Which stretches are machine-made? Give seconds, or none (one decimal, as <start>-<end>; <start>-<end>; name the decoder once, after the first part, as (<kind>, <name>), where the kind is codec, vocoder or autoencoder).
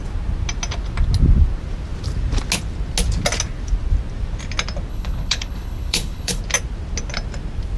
4.9-6.4 (codec, HILCodec)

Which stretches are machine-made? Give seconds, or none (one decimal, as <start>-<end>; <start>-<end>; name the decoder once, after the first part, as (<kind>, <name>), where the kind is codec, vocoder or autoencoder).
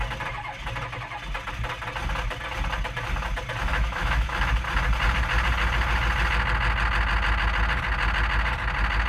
3.7-4.5 (autoencoder, DAC-VAE)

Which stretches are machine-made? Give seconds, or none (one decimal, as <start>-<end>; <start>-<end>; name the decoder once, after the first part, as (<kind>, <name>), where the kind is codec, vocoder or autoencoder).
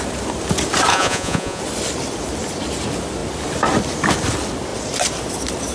0.9-1.6 (vocoder, Vocos)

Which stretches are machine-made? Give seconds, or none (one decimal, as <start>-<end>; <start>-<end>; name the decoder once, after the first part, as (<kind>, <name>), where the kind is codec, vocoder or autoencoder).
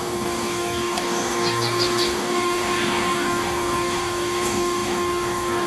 0.0-5.7 (codec, DAC)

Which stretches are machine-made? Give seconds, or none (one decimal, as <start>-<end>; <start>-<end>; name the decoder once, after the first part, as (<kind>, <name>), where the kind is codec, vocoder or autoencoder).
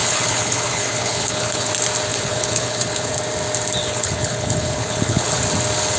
0.0-1.7 (codec, HILCodec); 2.1-3.1; 3.8-5.4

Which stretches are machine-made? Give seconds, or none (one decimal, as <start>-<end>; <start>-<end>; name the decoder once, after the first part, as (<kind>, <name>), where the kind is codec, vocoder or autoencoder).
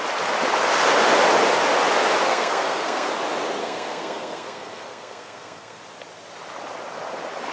2.3-3.1 (codec, SNAC); 3.6-5.8